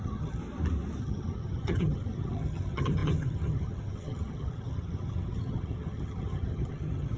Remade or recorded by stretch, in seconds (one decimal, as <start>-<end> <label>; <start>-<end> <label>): 0.0-0.4 remade; 0.4-1.0 recorded; 1.0-7.2 remade